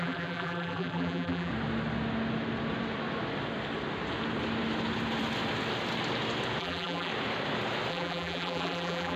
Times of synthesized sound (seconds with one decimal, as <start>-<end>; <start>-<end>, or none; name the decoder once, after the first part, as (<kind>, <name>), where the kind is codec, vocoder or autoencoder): 0.0-1.5 (vocoder, BigVGAN v2); 6.6-7.1; 7.9-9.2